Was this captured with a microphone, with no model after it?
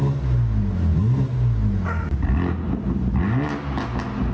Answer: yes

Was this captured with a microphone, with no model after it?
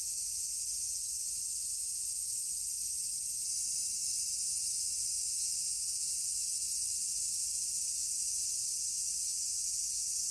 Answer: yes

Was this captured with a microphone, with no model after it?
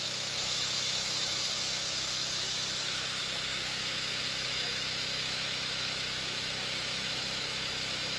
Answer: no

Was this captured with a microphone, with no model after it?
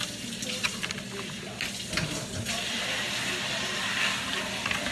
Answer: yes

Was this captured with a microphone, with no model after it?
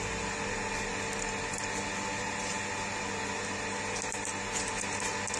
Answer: yes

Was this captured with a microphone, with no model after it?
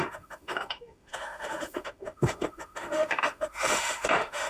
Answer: no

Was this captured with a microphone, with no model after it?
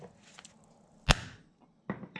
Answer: yes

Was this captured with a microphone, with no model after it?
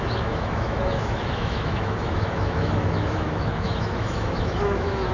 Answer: no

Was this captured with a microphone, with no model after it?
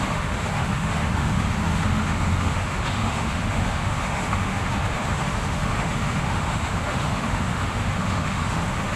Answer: no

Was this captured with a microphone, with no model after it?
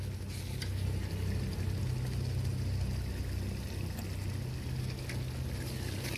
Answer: yes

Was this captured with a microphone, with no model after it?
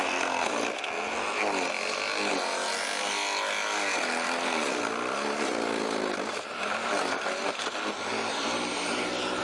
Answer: yes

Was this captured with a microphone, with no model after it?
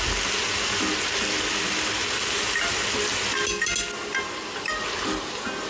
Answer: yes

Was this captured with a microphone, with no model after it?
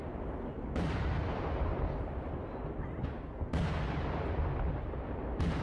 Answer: yes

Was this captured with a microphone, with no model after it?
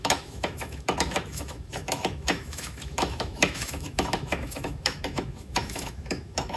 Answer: no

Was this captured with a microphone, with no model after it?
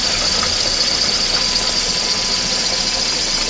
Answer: yes